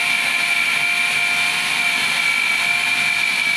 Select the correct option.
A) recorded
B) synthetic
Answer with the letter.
A